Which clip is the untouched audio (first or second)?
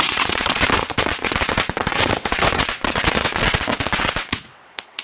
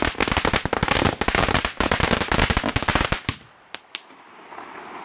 second